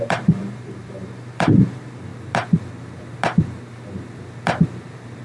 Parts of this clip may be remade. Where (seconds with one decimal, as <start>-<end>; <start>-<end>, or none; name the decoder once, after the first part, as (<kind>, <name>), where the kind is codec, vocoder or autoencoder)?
0.0-2.1 (vocoder, BigVGAN v2); 4.7-5.2